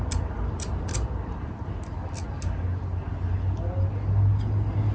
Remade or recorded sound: recorded